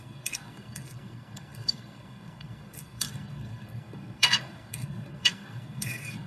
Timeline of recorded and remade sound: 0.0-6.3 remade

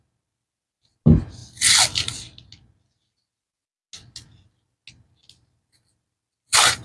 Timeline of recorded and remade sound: 0.0-6.8 recorded